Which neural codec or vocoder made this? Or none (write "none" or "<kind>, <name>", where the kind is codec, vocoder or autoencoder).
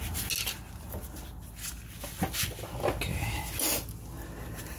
none